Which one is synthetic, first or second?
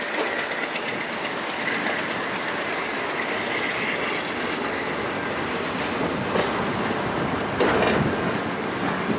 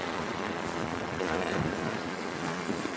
second